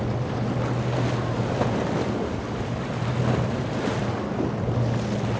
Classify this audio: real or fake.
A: real